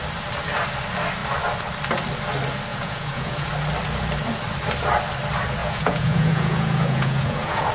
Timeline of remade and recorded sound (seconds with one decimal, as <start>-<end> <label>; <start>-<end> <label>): 0.0-2.7 recorded; 2.7-3.5 remade; 3.5-5.6 recorded; 5.6-7.7 remade